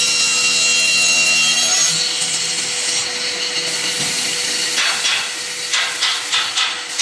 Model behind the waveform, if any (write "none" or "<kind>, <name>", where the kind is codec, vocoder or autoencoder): none